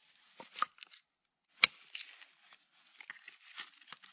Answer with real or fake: real